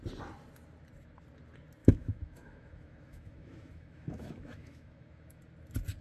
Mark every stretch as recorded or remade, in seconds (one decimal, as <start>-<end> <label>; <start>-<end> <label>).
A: 0.0-1.8 recorded; 1.8-5.4 remade; 5.4-6.0 recorded